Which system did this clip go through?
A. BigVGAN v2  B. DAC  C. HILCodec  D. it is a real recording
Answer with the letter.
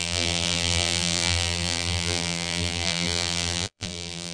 A